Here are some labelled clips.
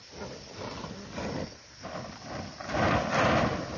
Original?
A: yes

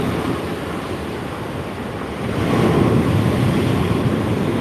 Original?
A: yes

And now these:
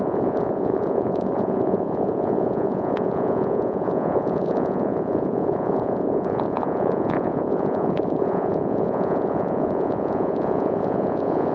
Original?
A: no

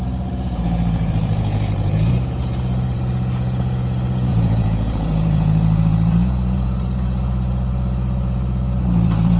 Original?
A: no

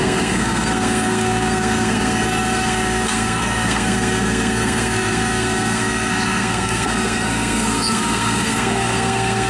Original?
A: no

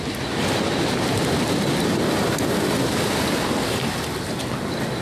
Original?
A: yes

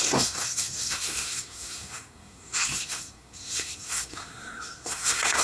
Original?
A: no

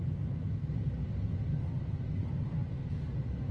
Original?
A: yes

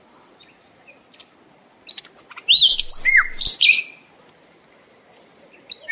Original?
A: yes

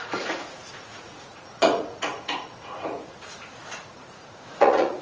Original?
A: no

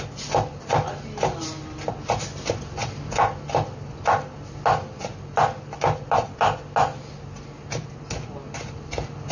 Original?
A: yes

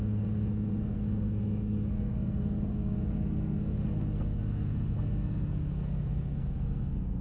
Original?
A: no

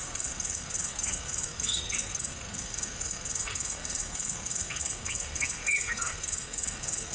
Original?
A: no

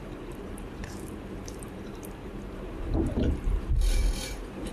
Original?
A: no